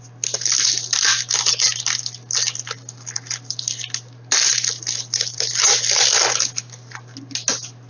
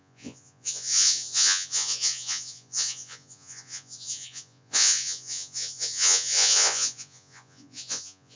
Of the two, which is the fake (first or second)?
second